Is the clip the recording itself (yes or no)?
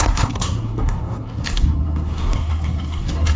no